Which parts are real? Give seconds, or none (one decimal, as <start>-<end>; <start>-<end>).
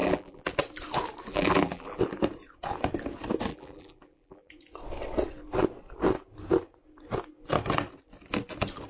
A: 0.5-1.3; 2.0-3.5; 4.5-8.9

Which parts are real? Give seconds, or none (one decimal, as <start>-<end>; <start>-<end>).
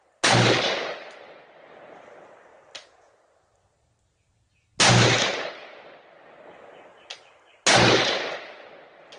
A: 0.0-9.2